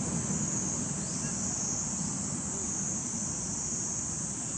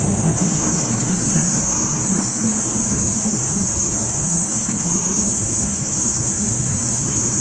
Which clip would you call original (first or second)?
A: first